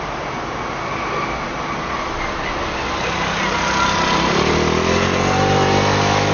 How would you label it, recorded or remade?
recorded